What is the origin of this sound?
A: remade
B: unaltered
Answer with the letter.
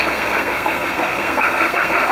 A